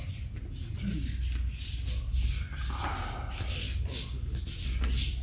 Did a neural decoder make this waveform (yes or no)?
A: no